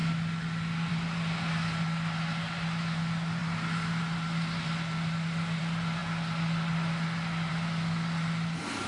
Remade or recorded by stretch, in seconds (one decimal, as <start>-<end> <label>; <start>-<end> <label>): 0.0-8.9 recorded